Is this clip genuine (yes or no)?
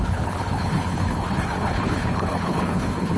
no